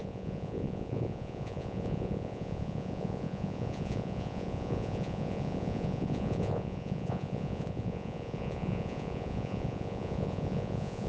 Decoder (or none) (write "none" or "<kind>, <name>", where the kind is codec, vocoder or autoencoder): vocoder, Vocos